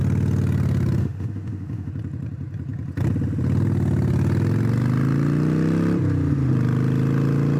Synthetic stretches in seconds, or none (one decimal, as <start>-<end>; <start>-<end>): 1.0-1.9